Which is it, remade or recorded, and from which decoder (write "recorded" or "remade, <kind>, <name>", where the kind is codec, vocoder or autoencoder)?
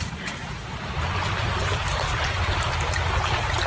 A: recorded